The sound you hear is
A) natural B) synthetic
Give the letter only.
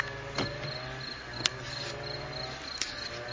A